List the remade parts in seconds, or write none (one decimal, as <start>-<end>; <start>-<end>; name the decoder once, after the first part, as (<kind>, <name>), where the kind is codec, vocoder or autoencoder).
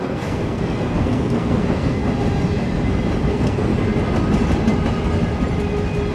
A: 0.0-2.0 (codec, SNAC); 3.3-3.7